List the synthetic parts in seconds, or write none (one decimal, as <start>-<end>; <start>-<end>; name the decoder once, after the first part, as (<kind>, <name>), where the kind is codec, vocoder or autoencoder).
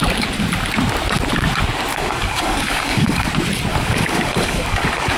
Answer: 1.9-3.3 (codec, DAC); 3.7-5.2